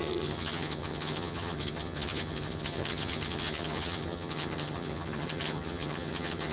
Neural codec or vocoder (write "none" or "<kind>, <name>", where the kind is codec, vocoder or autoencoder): vocoder, HiFi-GAN